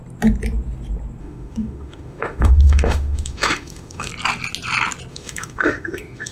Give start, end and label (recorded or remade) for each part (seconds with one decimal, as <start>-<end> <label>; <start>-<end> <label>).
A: 0.0-1.2 recorded; 1.2-4.1 remade; 4.1-5.1 recorded; 5.1-6.3 remade